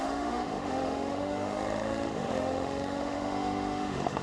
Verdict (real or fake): fake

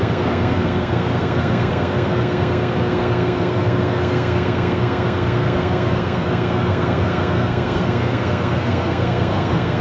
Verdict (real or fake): fake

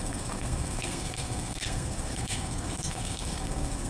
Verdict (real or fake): fake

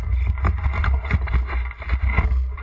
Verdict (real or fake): real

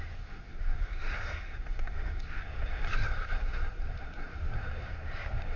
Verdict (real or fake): fake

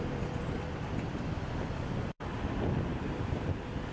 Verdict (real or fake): real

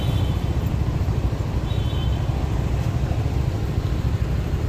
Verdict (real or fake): real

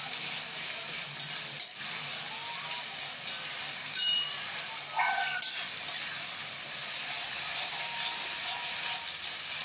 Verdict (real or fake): real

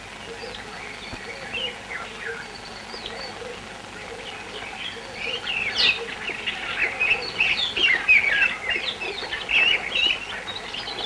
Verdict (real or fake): real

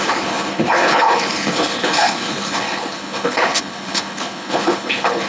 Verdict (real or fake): fake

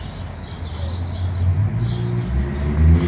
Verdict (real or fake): real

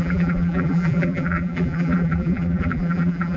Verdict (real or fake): fake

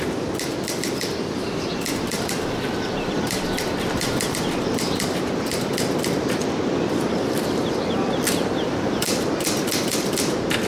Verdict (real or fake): fake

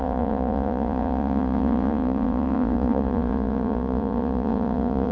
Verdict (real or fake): fake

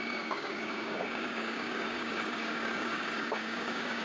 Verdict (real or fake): fake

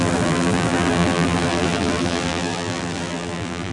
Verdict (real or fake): fake